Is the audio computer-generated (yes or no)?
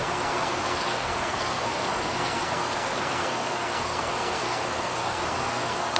yes